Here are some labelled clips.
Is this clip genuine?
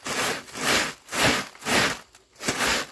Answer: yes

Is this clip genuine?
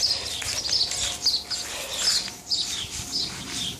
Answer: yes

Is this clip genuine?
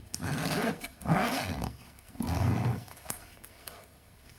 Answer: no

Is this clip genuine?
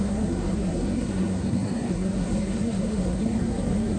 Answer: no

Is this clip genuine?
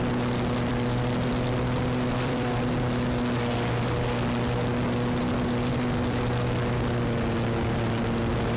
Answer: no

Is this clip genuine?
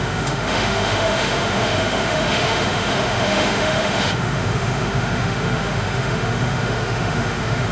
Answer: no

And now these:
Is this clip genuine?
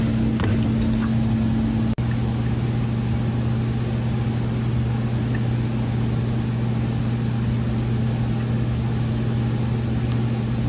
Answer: yes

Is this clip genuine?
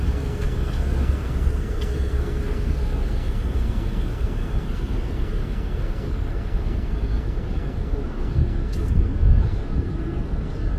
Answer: no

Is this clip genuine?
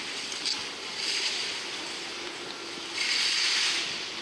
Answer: yes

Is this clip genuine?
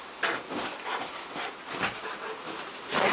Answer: yes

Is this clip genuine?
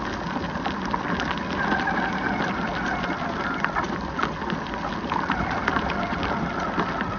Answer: yes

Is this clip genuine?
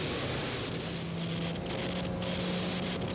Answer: yes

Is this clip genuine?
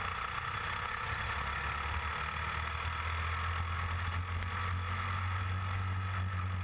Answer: yes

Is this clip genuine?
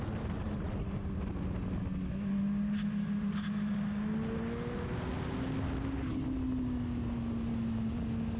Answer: yes